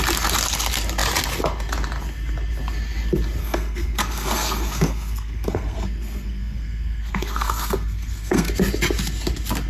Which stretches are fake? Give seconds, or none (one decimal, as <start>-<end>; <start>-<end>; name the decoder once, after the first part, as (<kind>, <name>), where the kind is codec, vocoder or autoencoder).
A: 3.4-8.5 (codec, SNAC)